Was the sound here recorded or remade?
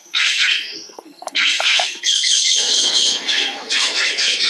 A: remade